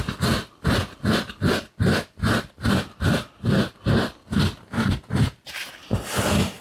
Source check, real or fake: real